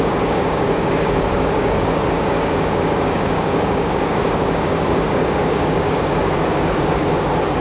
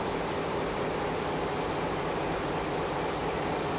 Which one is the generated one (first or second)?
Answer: first